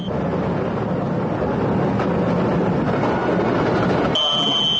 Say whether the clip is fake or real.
real